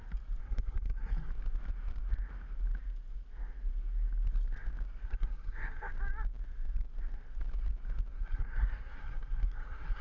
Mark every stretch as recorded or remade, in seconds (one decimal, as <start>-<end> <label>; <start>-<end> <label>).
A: 0.0-0.4 recorded; 0.4-1.3 remade; 1.3-5.0 recorded; 5.0-5.8 remade; 5.8-8.1 recorded; 8.1-10.0 remade